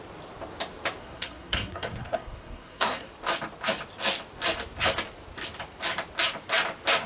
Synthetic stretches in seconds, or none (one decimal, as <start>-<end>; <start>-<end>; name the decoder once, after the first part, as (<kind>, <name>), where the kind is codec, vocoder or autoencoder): 1.0-3.1 (codec, SNAC)